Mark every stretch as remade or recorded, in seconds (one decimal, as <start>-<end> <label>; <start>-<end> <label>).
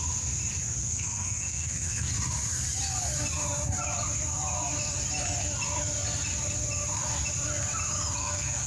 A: 0.0-0.8 recorded; 0.8-2.1 remade; 2.1-8.2 recorded; 8.2-8.7 remade